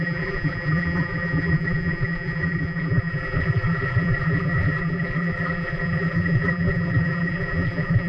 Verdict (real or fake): fake